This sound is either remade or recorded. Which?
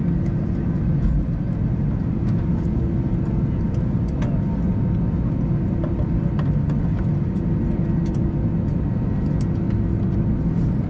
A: recorded